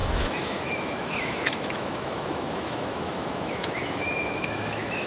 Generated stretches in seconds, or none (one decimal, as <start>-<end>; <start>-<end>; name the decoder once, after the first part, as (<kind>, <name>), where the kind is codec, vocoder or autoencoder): 0.0-5.1 (autoencoder, DAC-VAE)